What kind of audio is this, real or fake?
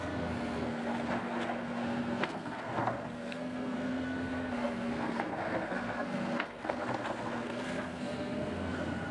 fake